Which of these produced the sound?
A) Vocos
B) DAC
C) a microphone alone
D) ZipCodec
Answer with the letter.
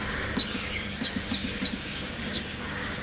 B